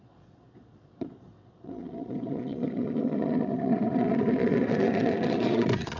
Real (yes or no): no